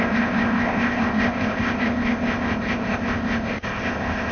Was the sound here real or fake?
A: fake